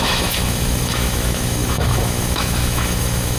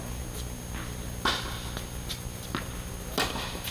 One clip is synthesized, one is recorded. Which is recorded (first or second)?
second